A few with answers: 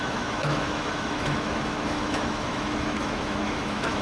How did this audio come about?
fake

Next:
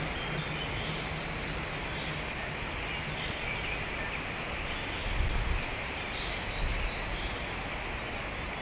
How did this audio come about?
real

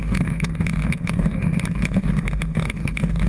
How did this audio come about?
fake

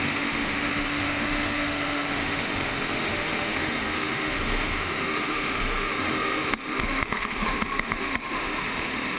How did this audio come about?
fake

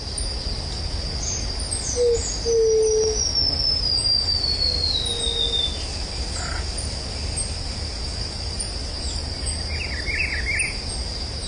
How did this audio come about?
real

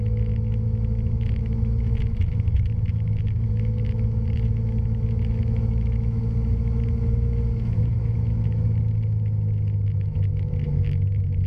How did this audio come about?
fake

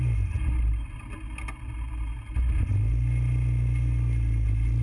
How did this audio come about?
real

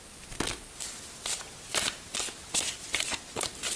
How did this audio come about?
real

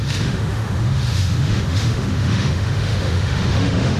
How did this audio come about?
fake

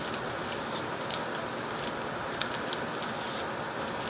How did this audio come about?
real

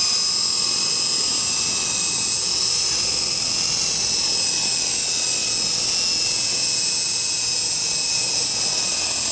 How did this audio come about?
real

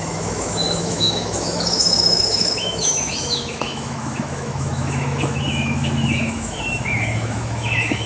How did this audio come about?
fake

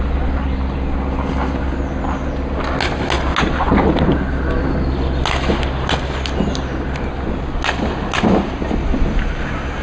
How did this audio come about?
real